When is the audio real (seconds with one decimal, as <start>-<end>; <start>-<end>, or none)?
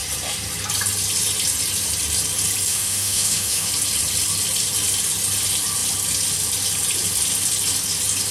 0.0-2.7; 3.7-8.3